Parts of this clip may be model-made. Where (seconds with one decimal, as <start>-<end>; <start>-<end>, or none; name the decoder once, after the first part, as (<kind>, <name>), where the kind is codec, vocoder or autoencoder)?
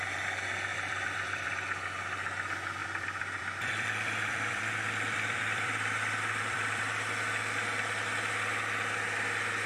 0.7-1.5 (vocoder, BigVGAN v2); 2.8-6.8